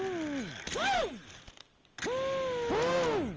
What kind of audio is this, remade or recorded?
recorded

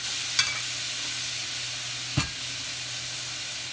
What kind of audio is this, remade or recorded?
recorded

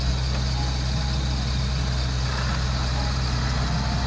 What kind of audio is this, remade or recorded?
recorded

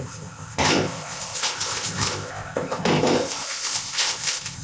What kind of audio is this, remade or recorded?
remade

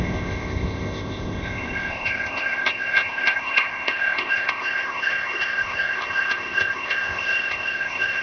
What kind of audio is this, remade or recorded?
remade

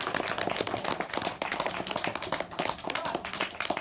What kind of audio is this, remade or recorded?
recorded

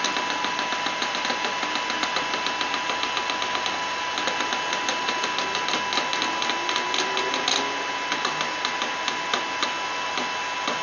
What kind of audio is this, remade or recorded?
recorded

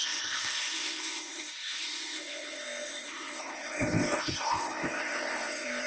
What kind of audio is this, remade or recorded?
remade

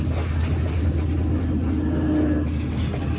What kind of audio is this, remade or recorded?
recorded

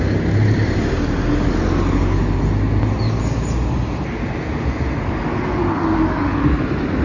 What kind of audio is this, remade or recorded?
recorded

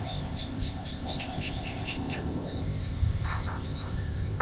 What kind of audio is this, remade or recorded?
remade